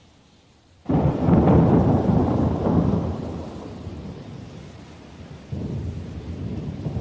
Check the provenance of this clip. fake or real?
real